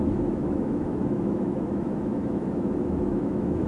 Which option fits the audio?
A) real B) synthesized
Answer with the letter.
B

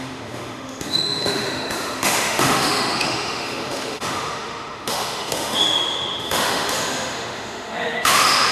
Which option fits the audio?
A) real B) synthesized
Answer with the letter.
B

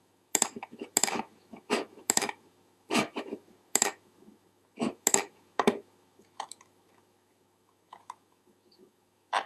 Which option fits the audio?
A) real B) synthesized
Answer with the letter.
B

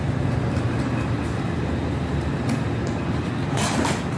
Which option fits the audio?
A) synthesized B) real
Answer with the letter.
B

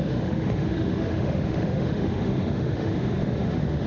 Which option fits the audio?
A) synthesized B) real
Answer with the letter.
A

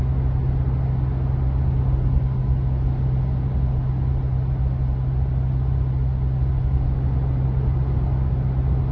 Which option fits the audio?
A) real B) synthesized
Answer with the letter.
A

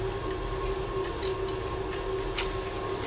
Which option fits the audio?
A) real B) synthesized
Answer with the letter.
A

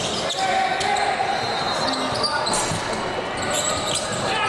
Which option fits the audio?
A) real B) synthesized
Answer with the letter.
A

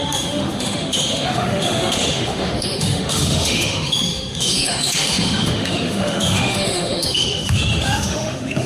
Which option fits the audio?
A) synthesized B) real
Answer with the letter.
A